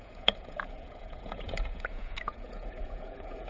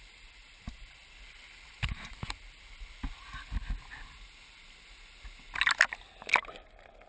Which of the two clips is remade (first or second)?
first